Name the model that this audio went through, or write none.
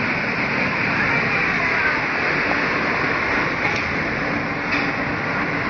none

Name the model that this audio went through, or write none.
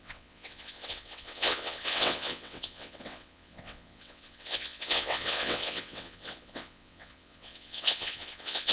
vocoder, WaveNeXt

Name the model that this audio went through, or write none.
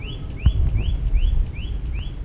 none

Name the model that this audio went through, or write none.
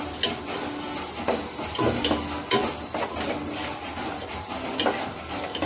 none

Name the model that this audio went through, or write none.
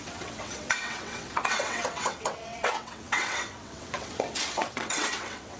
vocoder, WaveNeXt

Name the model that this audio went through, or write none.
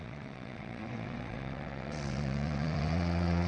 vocoder, WaveNeXt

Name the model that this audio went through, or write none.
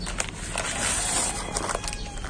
none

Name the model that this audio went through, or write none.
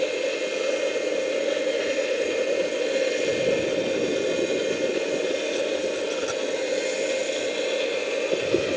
none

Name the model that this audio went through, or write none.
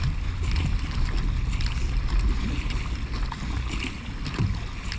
none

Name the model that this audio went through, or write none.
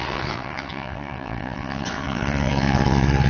vocoder, WaveNeXt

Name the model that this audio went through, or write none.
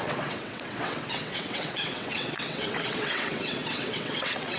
vocoder, WaveNeXt